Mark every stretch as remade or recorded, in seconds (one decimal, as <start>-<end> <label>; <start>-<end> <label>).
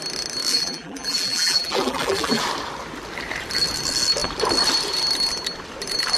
0.0-0.5 recorded; 0.5-2.4 remade; 2.4-6.2 recorded